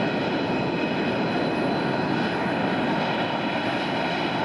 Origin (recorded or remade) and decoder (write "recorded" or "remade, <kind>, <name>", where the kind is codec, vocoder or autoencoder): recorded